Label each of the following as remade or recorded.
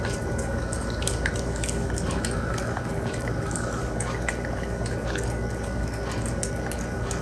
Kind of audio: remade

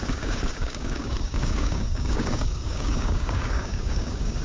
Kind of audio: remade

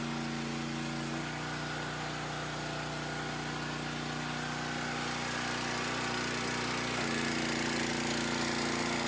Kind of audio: recorded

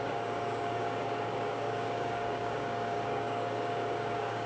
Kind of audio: remade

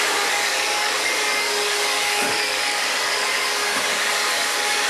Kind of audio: remade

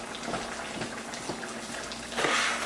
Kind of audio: recorded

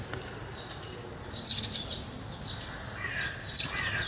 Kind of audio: recorded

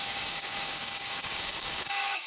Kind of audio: remade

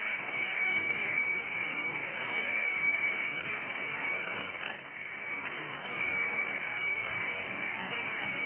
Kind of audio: remade